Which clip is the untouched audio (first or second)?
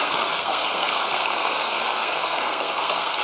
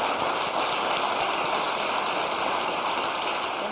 second